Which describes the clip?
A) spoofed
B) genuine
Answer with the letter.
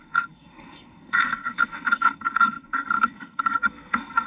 A